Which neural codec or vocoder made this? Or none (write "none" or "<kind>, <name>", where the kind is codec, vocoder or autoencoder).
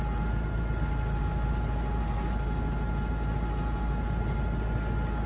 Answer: none